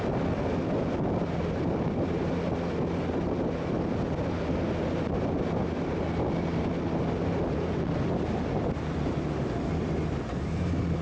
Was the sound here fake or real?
real